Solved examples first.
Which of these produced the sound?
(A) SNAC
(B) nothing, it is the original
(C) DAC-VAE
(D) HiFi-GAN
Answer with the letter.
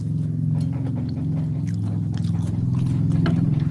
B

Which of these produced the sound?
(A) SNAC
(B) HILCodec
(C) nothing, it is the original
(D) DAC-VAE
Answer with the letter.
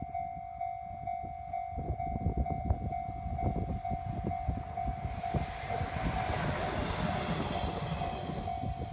C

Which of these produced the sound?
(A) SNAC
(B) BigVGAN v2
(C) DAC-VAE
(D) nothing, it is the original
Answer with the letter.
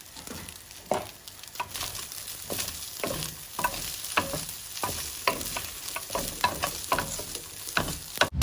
D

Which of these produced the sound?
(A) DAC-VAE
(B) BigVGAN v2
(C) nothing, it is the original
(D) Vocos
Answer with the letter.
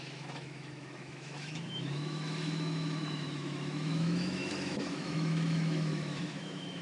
A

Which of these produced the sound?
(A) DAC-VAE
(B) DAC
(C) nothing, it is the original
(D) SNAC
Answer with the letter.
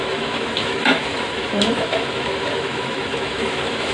A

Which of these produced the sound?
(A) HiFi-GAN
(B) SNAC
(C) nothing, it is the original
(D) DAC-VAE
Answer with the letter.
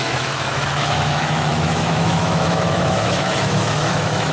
D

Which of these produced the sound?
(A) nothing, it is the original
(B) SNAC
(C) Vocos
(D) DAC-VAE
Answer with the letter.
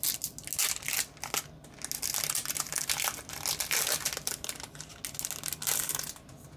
A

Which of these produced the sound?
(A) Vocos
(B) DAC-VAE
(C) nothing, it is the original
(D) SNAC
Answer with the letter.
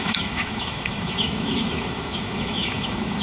B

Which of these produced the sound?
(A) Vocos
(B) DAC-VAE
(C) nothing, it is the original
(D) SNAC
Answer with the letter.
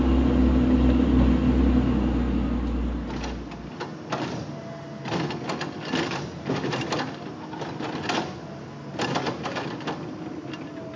C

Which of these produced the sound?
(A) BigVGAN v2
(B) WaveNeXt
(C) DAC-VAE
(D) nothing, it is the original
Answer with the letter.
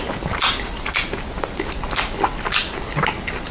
D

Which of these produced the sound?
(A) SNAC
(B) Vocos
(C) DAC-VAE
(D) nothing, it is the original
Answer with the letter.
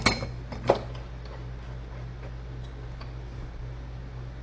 D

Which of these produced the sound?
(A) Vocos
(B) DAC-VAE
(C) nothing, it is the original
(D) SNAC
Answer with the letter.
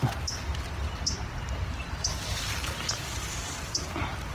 C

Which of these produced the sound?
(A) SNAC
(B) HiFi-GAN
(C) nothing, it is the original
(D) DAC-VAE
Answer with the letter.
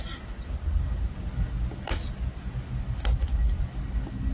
C